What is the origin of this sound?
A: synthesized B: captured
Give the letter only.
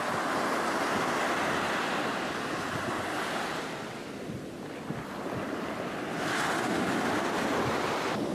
B